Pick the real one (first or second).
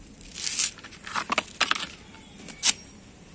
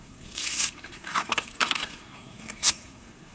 first